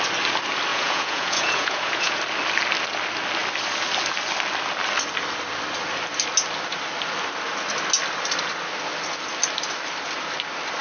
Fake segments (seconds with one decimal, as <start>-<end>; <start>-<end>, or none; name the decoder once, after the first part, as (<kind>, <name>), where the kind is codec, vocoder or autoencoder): 0.7-2.2 (vocoder, Vocos)